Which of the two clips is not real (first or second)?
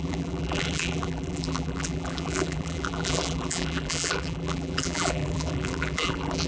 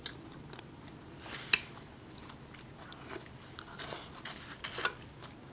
first